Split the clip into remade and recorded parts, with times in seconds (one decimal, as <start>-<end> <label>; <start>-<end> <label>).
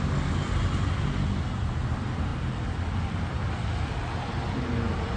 0.0-5.2 recorded